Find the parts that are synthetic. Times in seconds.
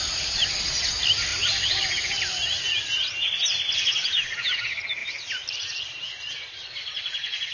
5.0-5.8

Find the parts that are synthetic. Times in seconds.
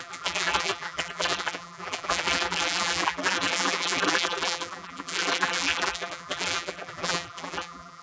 0.0-8.0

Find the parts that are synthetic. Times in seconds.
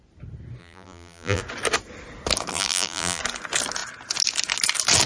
0.6-1.4; 2.5-3.2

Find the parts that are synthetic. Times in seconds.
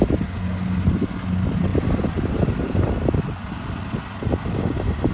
1.7-5.1